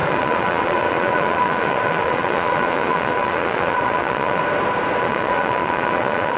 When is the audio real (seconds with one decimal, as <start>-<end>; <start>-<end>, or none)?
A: 4.4-5.0